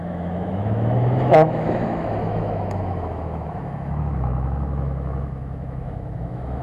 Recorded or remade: remade